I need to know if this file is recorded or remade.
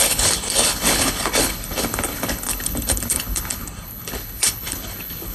remade